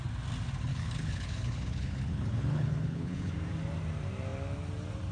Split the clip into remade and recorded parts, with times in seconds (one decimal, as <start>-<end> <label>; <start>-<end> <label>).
0.0-0.7 recorded; 0.7-3.3 remade; 3.3-5.1 recorded